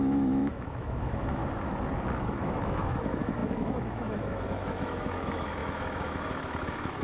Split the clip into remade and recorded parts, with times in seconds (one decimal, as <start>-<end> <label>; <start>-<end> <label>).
0.0-1.4 remade; 1.4-2.2 recorded; 2.2-7.0 remade